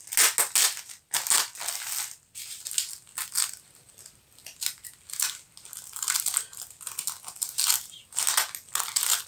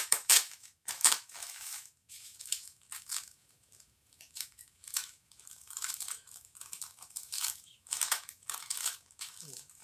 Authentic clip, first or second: first